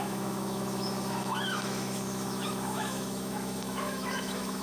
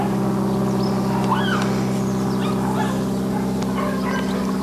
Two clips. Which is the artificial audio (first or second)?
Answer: first